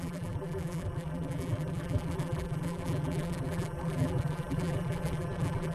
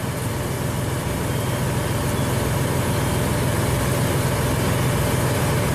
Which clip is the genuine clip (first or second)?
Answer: second